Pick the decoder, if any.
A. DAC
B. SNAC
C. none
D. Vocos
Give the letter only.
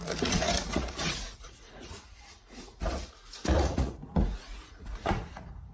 D